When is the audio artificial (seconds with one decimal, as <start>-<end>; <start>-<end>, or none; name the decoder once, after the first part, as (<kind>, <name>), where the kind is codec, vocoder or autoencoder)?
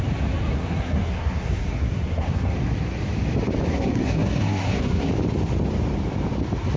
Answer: 0.5-2.5 (codec, SNAC); 3.7-5.1